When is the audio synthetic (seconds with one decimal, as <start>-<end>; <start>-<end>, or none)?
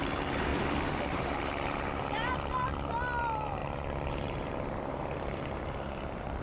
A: 0.0-0.5; 1.1-2.3; 3.2-6.4